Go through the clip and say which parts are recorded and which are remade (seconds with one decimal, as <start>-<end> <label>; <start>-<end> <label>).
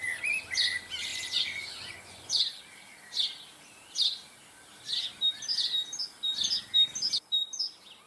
0.0-1.1 recorded; 1.1-2.6 remade; 2.6-8.1 recorded